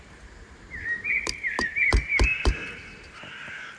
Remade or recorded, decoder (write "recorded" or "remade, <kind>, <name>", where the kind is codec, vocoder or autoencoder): remade, vocoder, BigVGAN v2